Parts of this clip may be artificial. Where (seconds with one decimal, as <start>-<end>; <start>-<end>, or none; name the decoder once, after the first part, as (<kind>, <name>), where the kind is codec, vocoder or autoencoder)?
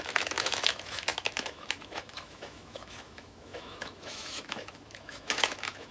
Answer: 0.0-5.9 (autoencoder, DAC-VAE)